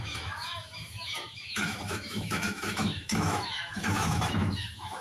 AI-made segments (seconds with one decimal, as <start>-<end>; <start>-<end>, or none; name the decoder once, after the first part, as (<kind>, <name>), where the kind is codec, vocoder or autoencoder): 0.0-5.0 (autoencoder, DAC-VAE)